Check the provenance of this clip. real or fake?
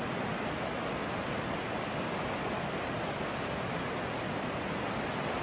real